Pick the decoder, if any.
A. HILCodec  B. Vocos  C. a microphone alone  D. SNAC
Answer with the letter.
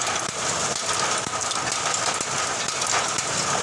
C